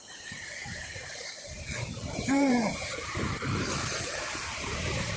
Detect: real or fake fake